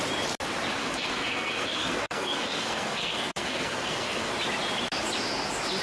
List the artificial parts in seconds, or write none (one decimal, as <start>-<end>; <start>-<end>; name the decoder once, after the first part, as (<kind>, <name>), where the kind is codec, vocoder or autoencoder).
0.8-4.3 (codec, SNAC)